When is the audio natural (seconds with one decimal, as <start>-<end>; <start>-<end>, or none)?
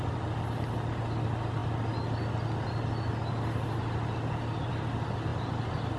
0.0-6.0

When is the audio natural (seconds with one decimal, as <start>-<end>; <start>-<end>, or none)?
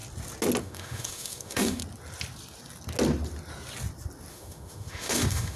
0.0-0.6; 1.8-4.3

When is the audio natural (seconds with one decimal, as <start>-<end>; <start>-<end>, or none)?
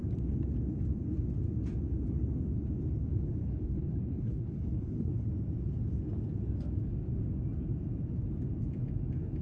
0.0-3.4; 5.3-9.4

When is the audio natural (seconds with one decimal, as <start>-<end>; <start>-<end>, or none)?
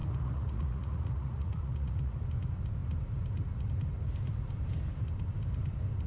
2.2-6.1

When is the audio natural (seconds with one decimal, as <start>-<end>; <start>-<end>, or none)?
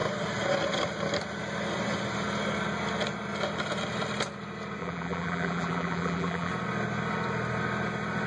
0.0-4.8; 6.5-8.3